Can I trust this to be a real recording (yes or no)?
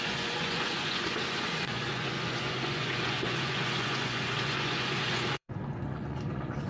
no